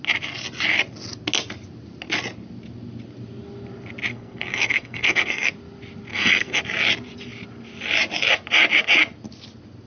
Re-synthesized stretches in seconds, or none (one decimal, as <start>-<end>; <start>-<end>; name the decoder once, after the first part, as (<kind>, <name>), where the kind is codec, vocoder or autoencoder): 4.1-5.5 (codec, SNAC); 6.1-6.6